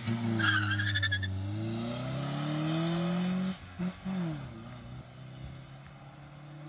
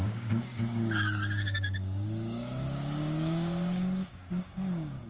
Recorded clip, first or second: first